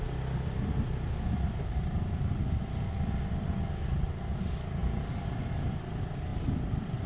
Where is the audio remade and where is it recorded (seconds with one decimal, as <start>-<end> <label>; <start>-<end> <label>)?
0.0-7.1 recorded